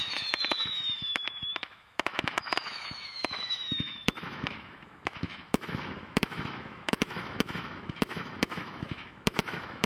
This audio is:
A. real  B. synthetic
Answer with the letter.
B